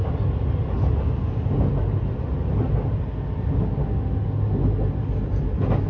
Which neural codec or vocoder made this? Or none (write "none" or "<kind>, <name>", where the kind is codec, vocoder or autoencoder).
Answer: none